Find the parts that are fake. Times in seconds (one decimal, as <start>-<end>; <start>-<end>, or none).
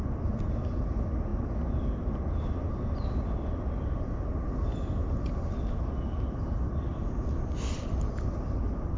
6.9-8.6